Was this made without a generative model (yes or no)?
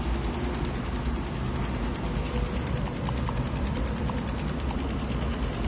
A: yes